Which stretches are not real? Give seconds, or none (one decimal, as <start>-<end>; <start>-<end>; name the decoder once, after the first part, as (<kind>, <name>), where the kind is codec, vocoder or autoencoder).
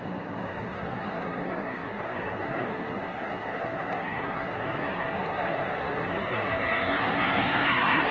0.0-8.1 (codec, SNAC)